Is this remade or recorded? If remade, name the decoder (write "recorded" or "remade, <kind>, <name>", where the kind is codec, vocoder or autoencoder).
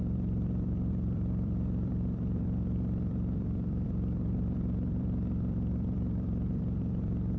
remade, vocoder, BigVGAN v2